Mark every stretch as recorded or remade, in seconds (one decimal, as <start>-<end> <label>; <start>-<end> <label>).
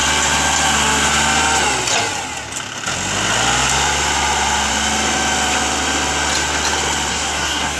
0.0-7.1 recorded; 7.1-7.8 remade